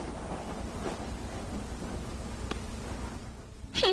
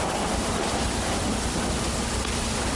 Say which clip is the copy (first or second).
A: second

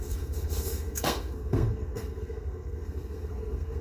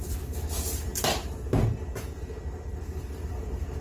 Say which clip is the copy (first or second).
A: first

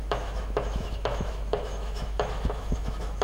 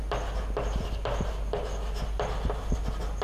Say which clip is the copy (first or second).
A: first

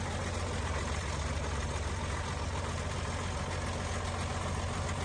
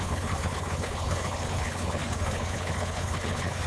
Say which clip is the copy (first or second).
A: second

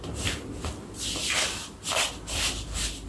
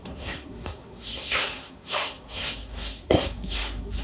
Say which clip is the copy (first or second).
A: second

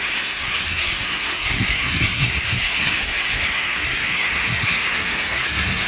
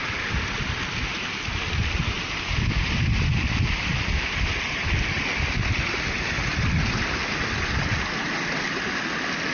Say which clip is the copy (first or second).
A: first